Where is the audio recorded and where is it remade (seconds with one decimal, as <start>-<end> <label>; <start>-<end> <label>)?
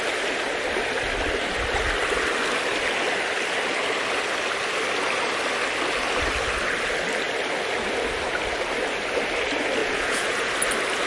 0.0-9.8 recorded; 9.8-10.5 remade; 10.5-11.1 recorded